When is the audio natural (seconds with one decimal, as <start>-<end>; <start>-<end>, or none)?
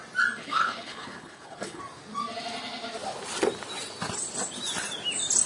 0.0-0.4; 1.8-5.5